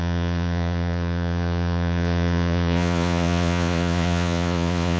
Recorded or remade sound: remade